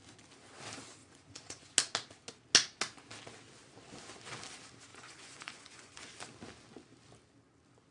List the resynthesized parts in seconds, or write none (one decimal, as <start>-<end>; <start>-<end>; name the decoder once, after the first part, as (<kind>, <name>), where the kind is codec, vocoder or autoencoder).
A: 1.0-1.7 (vocoder, Vocos); 4.9-6.0